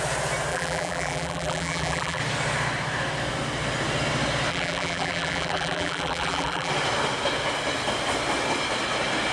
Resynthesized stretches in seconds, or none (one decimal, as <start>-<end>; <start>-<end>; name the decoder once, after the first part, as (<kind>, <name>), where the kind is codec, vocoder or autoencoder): 0.5-2.2 (vocoder, BigVGAN v2); 4.5-6.7

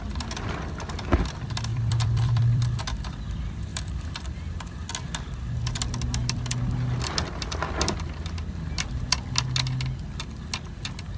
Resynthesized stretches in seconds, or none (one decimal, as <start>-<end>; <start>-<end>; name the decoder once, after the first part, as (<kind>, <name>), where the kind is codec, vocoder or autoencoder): 1.7-2.8 (vocoder, BigVGAN v2); 3.7-4.3

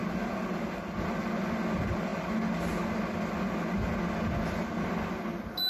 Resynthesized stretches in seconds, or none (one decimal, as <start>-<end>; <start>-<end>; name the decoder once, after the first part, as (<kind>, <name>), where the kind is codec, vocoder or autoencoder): none